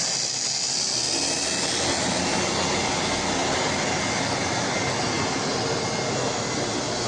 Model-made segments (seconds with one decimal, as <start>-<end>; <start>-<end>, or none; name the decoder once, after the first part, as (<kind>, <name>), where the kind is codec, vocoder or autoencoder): none